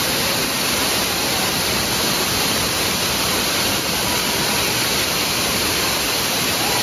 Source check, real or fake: fake